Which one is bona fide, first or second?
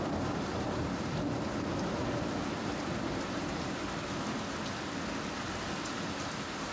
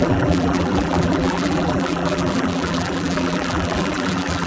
first